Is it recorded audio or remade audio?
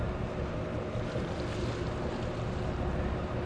recorded